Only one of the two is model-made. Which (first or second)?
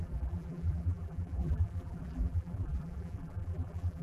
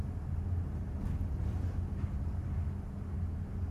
first